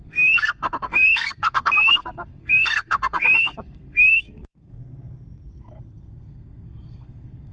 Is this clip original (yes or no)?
no